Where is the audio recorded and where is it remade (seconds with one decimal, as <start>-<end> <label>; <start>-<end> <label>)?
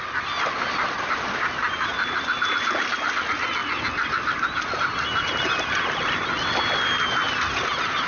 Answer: 0.0-8.1 recorded